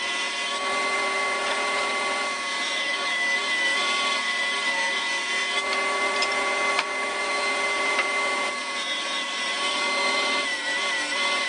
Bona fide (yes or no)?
no